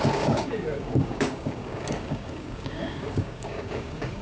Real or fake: fake